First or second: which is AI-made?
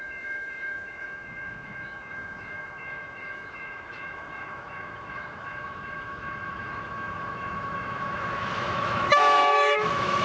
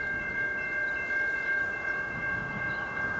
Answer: first